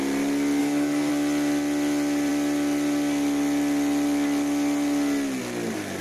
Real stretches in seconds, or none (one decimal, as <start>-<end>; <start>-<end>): 0.0-0.6; 1.1-6.0